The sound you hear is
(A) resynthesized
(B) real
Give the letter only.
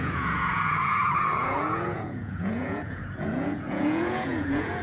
A